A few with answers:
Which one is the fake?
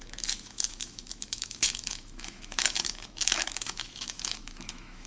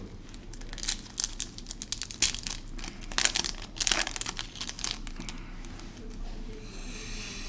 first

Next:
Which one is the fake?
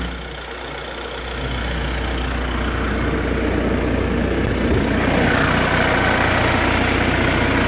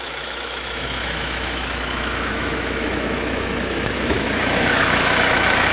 second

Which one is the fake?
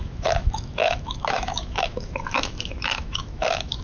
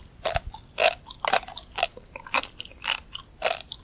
first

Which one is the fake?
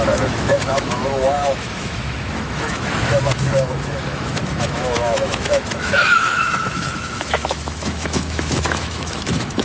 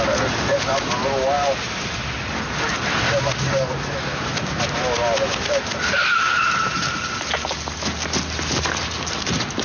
first